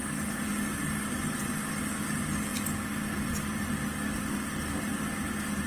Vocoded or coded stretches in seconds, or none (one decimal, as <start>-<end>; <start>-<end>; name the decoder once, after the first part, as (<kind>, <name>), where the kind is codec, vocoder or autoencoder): none